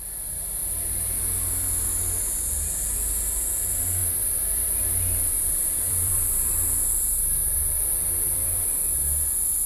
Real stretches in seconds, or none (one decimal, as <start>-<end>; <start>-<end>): 0.0-0.6; 1.2-4.0; 9.0-9.7